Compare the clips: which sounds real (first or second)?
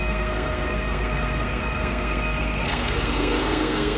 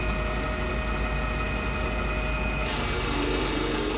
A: second